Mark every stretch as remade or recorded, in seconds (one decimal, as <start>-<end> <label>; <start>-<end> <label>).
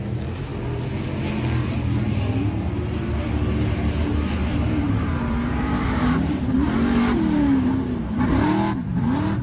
0.0-4.4 recorded; 4.4-6.3 remade; 6.3-9.4 recorded